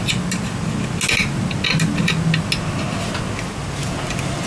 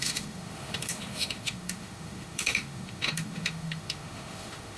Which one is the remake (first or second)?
second